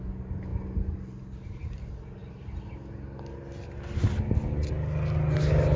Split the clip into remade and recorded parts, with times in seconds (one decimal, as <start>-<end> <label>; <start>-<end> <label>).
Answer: 0.0-5.8 recorded